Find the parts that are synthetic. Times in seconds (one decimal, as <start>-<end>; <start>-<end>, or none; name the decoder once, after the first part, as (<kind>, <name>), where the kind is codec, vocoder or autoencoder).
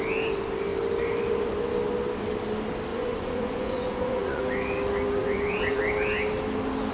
2.9-4.4 (vocoder, Vocos); 5.2-5.8